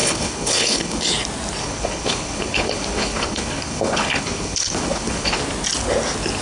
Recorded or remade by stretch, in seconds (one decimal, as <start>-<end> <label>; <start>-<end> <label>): 0.0-1.0 remade; 1.0-1.6 recorded; 1.6-5.4 remade; 5.4-6.4 recorded